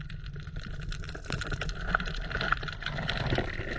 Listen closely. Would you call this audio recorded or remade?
recorded